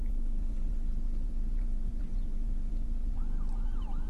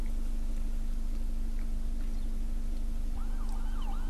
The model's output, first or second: first